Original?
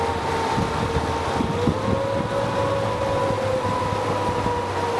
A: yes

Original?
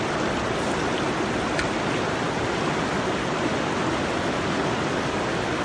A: yes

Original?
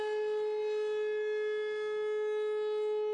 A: yes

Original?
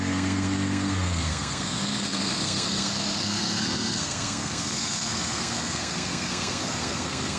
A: no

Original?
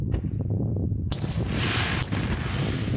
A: yes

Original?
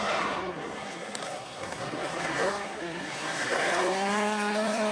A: no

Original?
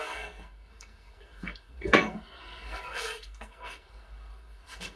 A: no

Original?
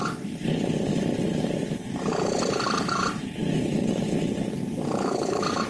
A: yes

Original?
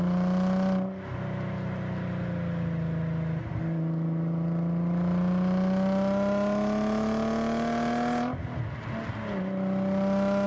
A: yes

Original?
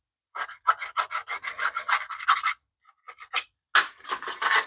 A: yes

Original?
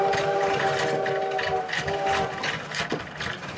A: yes